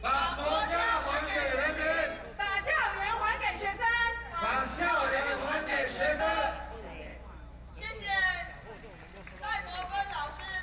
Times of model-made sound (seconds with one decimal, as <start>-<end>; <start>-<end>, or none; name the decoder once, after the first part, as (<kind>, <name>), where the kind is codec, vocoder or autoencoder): 4.7-6.2 (autoencoder, DAC-VAE); 7.1-7.7